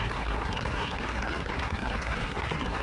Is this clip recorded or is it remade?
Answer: remade